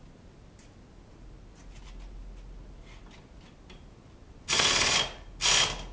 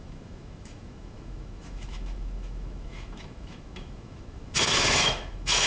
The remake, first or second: second